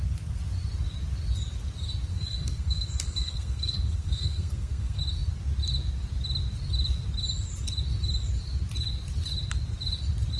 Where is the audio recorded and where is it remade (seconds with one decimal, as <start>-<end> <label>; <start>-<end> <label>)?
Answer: 0.0-2.1 recorded; 2.1-5.0 remade; 5.0-10.4 recorded